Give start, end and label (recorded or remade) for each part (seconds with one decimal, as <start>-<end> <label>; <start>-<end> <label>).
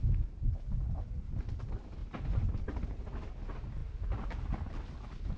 0.0-5.4 recorded